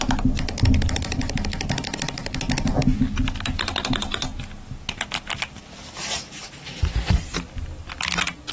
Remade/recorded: recorded